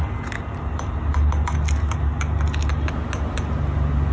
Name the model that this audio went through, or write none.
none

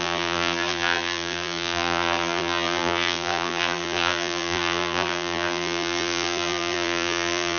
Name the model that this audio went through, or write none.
vocoder, BigVGAN v2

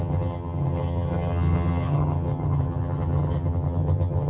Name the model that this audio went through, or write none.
vocoder, HiFi-GAN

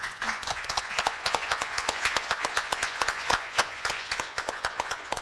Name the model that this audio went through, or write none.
vocoder, Vocos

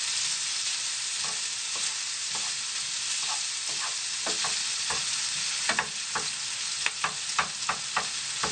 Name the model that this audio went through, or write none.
none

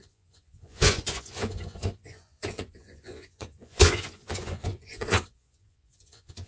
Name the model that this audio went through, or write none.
vocoder, Vocos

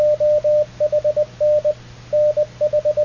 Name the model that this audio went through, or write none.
none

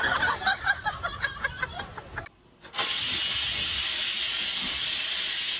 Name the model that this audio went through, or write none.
none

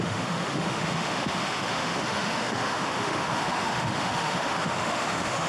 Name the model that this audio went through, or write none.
autoencoder, DAC-VAE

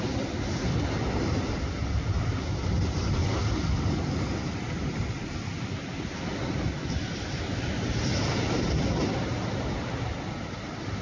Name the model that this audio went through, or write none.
none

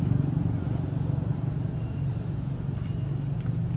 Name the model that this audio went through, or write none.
none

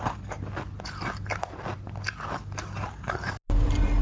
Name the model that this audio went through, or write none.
none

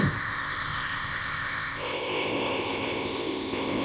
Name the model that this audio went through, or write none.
codec, ZipCodec